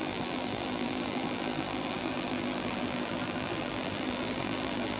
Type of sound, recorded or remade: remade